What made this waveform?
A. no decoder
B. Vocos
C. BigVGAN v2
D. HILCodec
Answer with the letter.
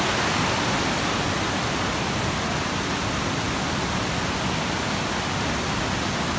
A